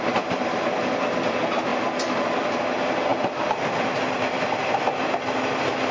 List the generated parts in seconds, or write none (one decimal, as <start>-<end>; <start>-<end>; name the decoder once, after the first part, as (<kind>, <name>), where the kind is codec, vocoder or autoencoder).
none